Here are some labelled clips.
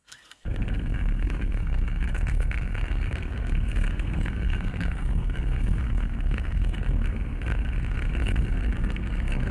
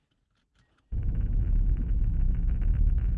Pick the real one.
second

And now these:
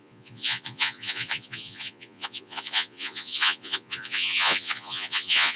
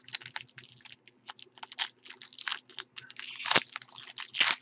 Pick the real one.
second